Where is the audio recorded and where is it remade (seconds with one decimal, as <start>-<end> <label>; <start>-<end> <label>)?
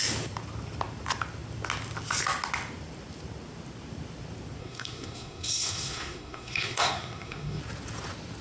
0.0-4.6 recorded; 4.6-7.6 remade; 7.6-8.4 recorded